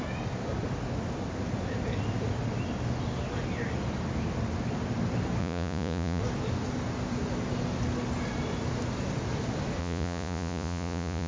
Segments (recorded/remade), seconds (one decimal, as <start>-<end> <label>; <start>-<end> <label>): 0.0-5.4 recorded; 5.4-6.2 remade; 6.2-9.8 recorded; 9.8-11.3 remade